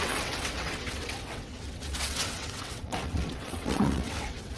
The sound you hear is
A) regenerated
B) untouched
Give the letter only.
A